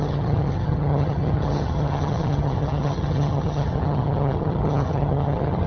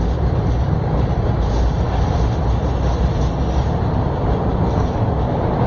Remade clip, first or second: first